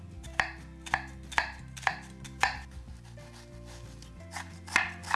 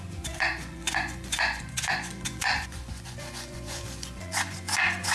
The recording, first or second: first